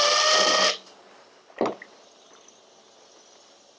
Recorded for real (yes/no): yes